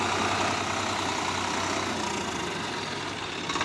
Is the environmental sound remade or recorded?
recorded